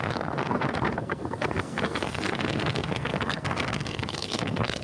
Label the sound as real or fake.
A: fake